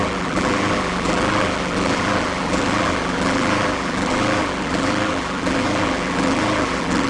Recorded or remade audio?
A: remade